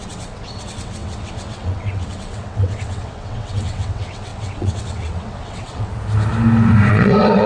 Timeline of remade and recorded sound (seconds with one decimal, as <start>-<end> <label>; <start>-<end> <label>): 0.0-5.9 remade; 5.9-6.9 recorded; 6.9-7.5 remade